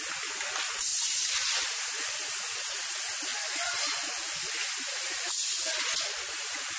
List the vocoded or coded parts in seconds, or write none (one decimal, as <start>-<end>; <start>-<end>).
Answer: 0.9-2.4